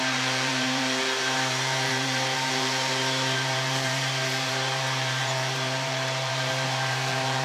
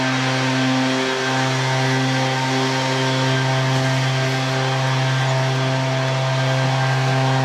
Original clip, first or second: second